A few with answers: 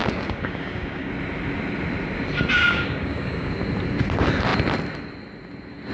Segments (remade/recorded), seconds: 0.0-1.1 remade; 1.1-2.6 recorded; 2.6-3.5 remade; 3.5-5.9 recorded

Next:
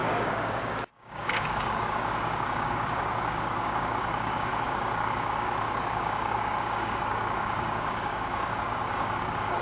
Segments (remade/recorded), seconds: 0.0-9.6 remade

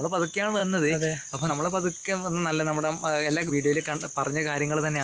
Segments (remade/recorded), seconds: 0.0-2.0 recorded; 2.0-3.5 remade; 3.5-5.0 recorded

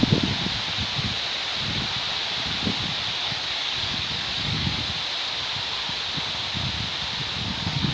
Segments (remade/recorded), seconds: 0.0-3.2 recorded; 3.2-4.8 remade; 4.8-7.4 recorded; 7.4-7.9 remade